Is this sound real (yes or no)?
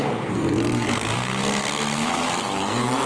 no